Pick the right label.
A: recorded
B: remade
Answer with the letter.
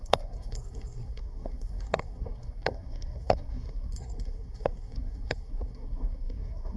B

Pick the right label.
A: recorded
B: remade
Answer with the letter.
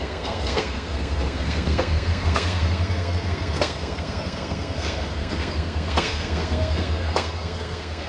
B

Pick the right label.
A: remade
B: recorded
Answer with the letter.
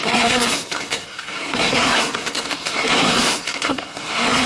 A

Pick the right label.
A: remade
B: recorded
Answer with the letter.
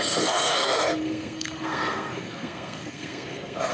A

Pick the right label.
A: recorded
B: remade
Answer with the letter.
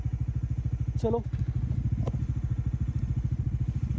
A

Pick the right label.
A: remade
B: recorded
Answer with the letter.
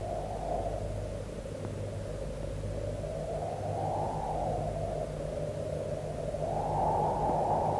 B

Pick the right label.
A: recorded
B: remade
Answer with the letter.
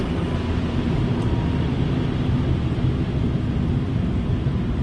A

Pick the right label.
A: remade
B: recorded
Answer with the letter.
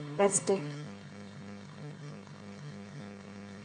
A